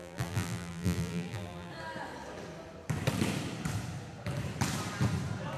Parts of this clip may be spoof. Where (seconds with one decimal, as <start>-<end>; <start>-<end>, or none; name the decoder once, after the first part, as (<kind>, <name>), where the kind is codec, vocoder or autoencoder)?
0.0-1.7 (vocoder, BigVGAN v2)